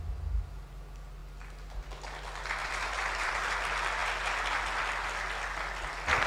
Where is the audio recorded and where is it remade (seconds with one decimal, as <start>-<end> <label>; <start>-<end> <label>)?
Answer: 0.0-2.6 recorded; 2.6-3.3 remade; 3.3-6.3 recorded